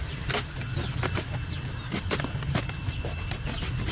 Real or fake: real